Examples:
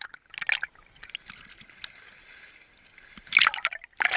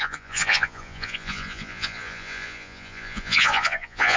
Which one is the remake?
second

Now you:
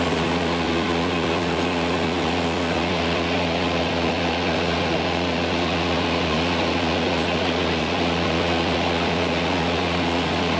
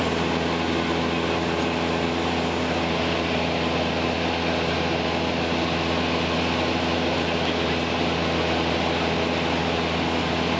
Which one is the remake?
first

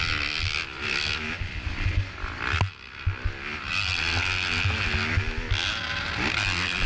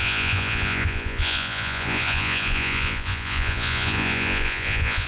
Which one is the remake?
second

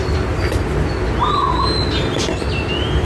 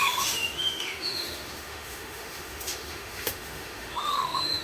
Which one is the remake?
second